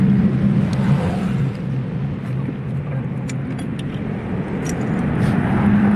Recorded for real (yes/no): yes